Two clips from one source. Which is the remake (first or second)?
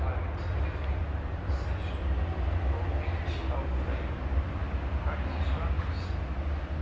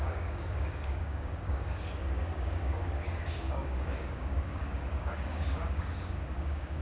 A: second